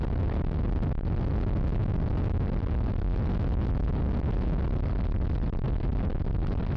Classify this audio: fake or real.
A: real